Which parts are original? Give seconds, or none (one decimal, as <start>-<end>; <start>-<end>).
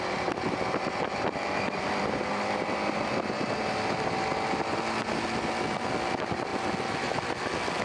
0.0-7.8